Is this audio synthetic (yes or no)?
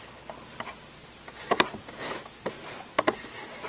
no